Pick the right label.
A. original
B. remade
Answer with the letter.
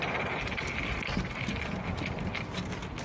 A